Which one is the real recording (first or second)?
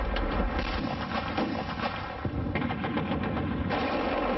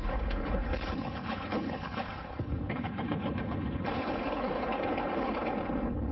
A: first